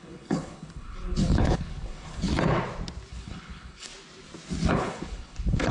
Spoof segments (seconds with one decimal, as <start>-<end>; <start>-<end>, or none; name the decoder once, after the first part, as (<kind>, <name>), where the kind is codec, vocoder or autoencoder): 0.0-2.3 (codec, HILCodec); 3.1-3.9; 4.7-5.7